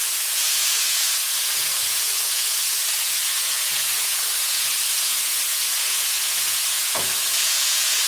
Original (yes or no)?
no